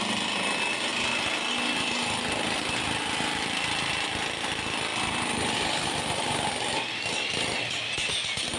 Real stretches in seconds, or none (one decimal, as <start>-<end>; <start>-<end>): 0.0-8.6

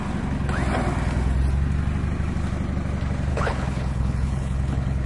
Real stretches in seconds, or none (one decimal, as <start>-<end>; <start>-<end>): 0.0-3.3

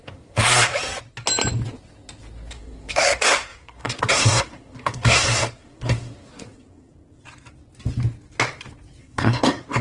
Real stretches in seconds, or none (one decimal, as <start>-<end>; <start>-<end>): 0.7-2.5; 6.9-9.0

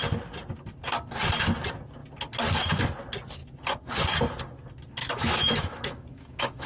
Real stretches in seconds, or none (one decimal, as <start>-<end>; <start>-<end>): 0.0-5.0

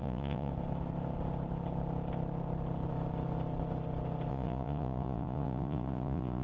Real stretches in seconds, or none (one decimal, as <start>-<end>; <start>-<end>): 0.5-4.3